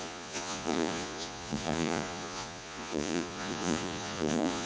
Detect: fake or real fake